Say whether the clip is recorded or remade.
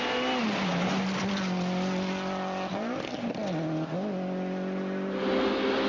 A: recorded